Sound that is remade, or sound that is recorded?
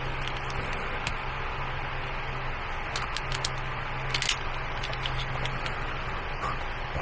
recorded